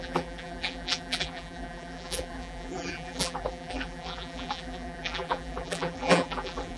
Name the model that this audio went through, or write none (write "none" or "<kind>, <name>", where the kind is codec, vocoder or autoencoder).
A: vocoder, BigVGAN v2